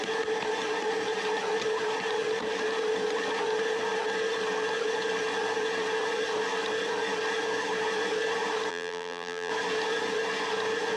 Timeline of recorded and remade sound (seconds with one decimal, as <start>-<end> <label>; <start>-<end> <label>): 0.0-8.7 recorded; 8.7-9.5 remade; 9.5-11.0 recorded